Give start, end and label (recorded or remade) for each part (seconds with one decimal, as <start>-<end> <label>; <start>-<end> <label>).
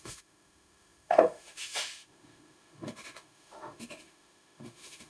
0.0-5.1 remade